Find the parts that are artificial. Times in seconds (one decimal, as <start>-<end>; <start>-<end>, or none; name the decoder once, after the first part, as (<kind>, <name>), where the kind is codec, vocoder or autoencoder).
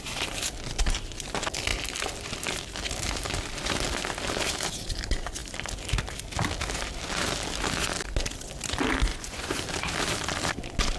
9.1-9.6 (vocoder, Vocos)